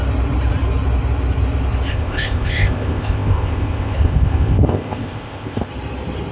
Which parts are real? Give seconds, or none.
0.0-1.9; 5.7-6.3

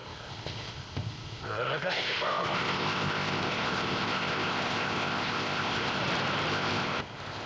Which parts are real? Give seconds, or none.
6.0-6.5

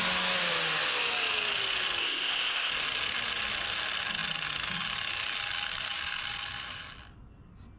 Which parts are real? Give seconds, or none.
0.0-2.0; 2.7-7.8